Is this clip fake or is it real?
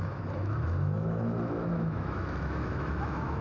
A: fake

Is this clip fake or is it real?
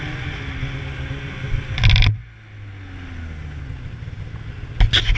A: real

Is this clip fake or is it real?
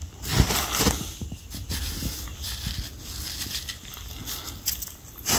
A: real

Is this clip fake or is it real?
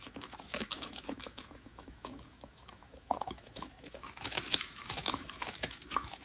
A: fake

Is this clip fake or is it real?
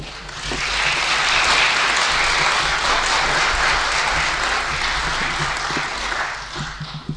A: real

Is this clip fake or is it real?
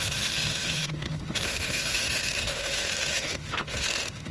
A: fake